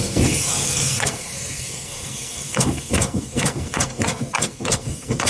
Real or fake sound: fake